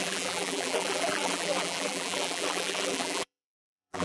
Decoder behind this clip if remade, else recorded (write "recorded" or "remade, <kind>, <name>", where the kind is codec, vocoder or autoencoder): remade, vocoder, BigVGAN v2